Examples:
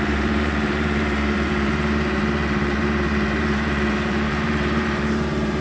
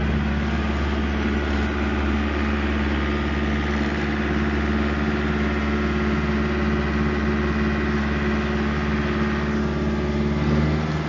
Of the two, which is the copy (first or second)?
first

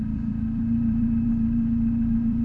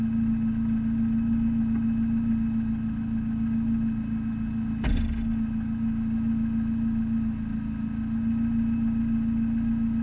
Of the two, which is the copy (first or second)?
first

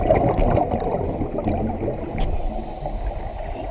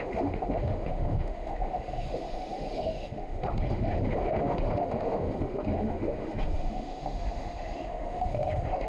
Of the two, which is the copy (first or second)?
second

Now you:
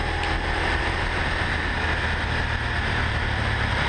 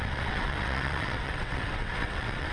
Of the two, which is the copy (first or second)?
second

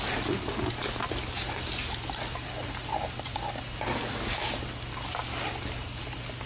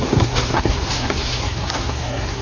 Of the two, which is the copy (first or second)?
second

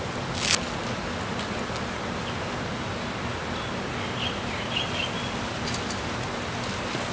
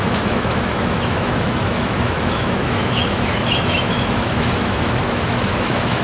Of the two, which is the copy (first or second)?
second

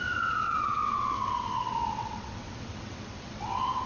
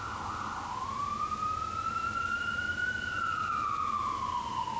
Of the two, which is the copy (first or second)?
first